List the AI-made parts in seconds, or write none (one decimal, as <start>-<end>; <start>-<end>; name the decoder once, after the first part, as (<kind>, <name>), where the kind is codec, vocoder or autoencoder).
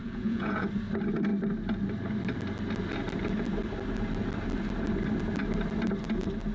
0.0-0.7 (vocoder, Vocos)